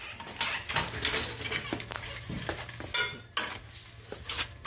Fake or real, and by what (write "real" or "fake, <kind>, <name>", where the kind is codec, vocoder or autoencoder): real